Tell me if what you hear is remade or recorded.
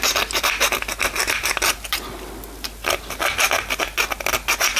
recorded